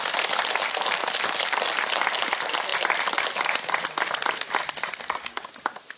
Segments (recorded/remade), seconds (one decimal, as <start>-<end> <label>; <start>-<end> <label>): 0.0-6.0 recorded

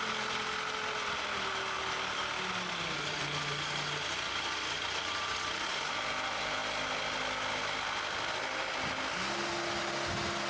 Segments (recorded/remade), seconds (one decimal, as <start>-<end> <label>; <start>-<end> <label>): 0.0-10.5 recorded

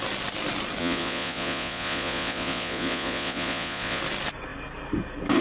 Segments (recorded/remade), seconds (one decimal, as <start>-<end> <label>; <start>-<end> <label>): 0.0-0.8 recorded; 0.8-4.0 remade; 4.0-5.4 recorded

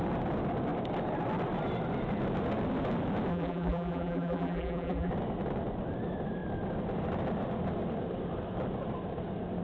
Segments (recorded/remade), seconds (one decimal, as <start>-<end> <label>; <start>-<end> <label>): 0.0-3.3 recorded; 3.3-5.1 remade; 5.1-9.6 recorded

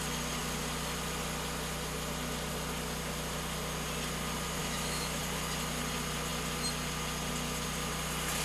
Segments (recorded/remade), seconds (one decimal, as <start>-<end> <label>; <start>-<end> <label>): 0.0-4.6 recorded; 4.6-5.2 remade; 5.2-8.4 recorded

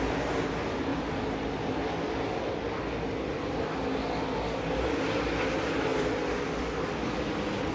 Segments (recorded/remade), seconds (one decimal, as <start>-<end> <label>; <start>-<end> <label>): 0.0-7.7 recorded

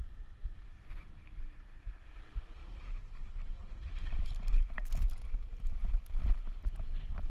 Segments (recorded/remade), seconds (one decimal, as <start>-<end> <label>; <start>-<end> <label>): 0.0-0.4 recorded; 0.4-1.0 remade; 1.0-2.6 recorded; 2.6-4.3 remade; 4.3-5.8 recorded; 5.8-7.3 remade